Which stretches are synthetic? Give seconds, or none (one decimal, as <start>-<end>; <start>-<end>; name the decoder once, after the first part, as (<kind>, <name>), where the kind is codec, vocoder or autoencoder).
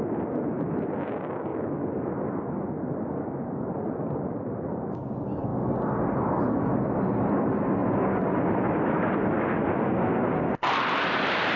none